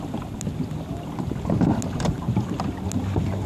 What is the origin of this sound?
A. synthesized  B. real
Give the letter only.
B